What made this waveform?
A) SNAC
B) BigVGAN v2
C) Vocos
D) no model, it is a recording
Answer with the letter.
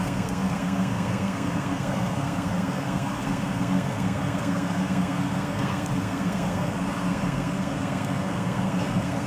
A